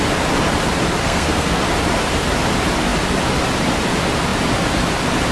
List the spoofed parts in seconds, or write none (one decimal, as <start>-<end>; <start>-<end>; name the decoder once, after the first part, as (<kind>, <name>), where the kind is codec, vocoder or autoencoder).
1.0-1.6 (codec, SNAC)